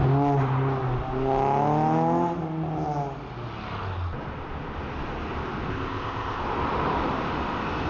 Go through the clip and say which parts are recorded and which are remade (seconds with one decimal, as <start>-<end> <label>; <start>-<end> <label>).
0.0-5.7 recorded; 5.7-6.4 remade; 6.4-7.9 recorded

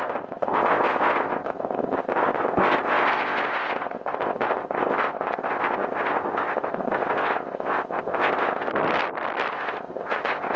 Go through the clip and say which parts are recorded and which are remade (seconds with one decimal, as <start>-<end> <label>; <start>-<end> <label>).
0.0-8.7 remade; 8.7-9.5 recorded; 9.5-10.6 remade

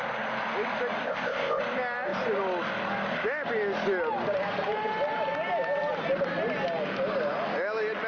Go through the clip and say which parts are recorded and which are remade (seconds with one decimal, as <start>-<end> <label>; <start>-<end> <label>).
0.0-1.0 recorded; 1.0-1.6 remade; 1.6-8.1 recorded

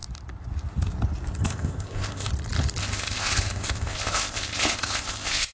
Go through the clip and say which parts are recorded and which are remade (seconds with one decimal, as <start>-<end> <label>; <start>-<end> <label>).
0.0-1.4 recorded; 1.4-2.3 remade; 2.3-2.8 recorded; 2.8-5.5 remade

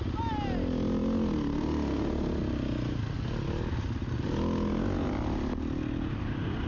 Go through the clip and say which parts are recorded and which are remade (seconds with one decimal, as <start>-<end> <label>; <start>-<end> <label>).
0.0-6.7 recorded